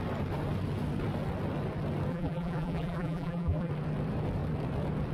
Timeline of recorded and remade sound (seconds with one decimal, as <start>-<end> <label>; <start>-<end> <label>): 0.0-2.1 recorded; 2.1-3.7 remade; 3.7-5.1 recorded